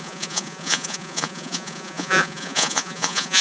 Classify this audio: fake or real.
fake